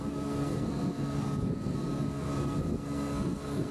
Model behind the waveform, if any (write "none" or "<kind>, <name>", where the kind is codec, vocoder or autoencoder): codec, SNAC